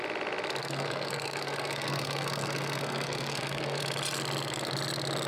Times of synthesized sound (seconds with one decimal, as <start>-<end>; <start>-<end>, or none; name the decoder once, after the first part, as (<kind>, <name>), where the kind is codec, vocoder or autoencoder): 0.6-3.8 (codec, SNAC)